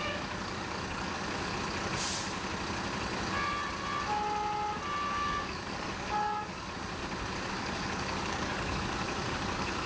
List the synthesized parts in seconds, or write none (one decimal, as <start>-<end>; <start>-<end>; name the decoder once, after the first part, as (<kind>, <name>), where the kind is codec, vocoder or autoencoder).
0.0-1.5 (codec, DAC); 5.1-7.0; 7.5-9.9